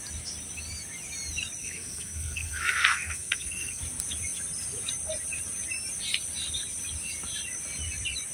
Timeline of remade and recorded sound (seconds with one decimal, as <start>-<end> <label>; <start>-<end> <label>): 0.0-1.6 recorded; 1.6-3.8 remade; 3.8-8.3 recorded